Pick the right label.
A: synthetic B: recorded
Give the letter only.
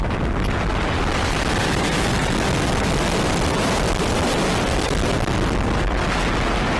B